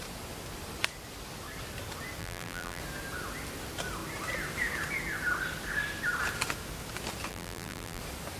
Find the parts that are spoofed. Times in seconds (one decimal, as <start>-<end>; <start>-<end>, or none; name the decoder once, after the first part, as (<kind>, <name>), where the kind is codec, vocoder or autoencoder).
2.2-2.8 (vocoder, BigVGAN v2); 7.3-8.0